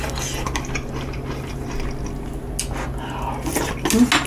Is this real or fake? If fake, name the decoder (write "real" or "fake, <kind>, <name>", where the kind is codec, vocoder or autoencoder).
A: real